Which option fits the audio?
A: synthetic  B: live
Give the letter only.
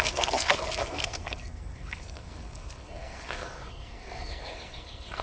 A